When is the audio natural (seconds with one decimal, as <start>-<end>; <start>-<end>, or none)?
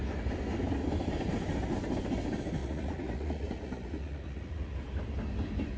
0.0-2.6; 4.7-5.8